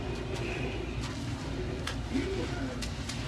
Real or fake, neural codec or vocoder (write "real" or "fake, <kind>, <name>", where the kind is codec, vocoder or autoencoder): real